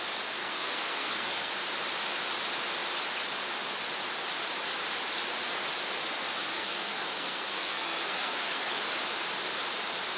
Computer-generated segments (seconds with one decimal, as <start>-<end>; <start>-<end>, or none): 0.4-1.5; 6.5-8.8